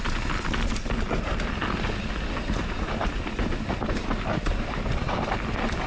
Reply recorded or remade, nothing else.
recorded